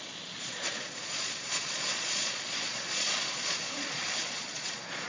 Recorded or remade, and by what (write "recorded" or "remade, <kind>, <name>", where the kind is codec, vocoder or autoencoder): remade, vocoder, Vocos